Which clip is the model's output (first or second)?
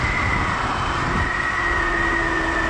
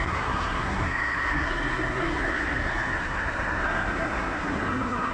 second